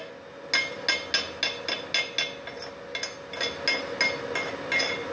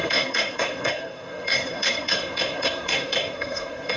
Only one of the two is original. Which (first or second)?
first